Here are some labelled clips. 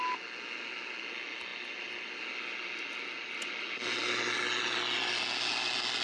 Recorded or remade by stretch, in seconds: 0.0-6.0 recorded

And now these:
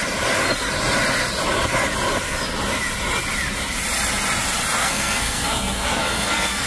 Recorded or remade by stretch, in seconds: 0.0-4.8 recorded; 4.8-6.7 remade

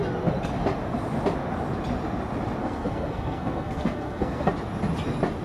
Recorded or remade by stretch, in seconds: 0.0-2.6 recorded; 2.6-4.5 remade; 4.5-5.4 recorded

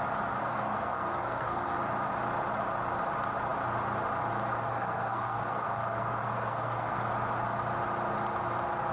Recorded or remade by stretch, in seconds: 0.0-0.4 recorded; 0.4-1.8 remade; 1.8-4.7 recorded; 4.7-7.0 remade; 7.0-8.9 recorded

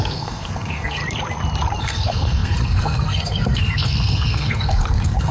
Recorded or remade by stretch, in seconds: 0.0-1.0 remade; 1.0-1.8 recorded; 1.8-5.3 remade

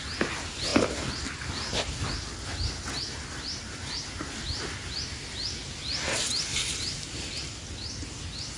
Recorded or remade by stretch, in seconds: 0.0-8.6 recorded

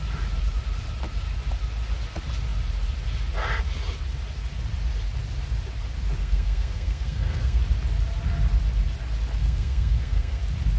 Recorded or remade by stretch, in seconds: 0.0-6.2 recorded; 6.2-7.6 remade; 7.6-9.4 recorded; 9.4-10.4 remade; 10.4-10.8 recorded

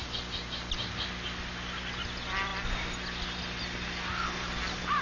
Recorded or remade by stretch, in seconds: 0.0-5.0 recorded